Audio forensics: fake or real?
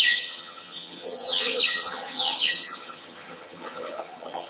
fake